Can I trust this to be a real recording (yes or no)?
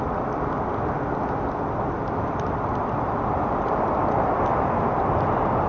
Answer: yes